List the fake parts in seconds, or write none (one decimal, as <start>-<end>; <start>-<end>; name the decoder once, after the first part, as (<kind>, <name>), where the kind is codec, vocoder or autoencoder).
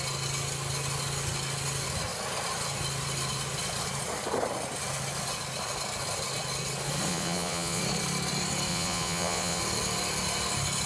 7.1-7.8 (vocoder, Vocos); 8.7-9.6